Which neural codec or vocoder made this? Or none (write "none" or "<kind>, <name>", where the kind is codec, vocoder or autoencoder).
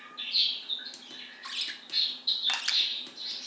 none